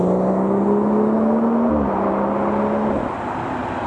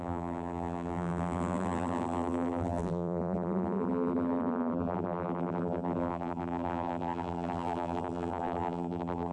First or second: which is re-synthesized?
second